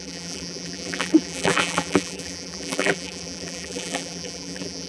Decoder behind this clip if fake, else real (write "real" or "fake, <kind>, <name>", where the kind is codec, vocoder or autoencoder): fake, vocoder, BigVGAN v2